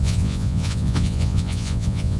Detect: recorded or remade remade